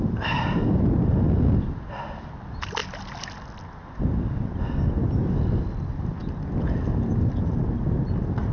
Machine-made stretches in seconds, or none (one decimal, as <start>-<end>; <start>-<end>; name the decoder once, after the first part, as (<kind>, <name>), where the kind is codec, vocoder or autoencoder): none